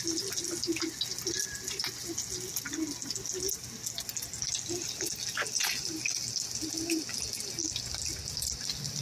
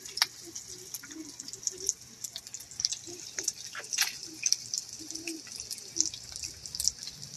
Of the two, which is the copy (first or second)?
second